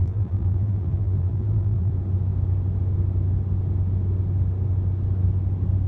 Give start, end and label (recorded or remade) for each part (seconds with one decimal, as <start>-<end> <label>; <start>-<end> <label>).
0.0-1.9 remade; 1.9-5.9 recorded